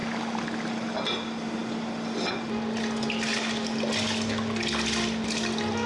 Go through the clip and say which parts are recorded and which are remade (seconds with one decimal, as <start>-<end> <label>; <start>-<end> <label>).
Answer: 0.0-5.9 recorded